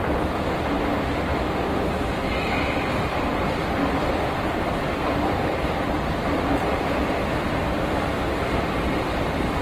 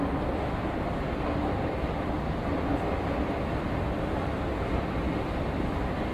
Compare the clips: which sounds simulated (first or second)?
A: first